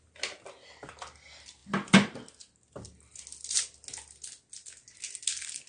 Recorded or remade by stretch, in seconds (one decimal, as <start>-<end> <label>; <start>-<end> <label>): 0.0-5.7 recorded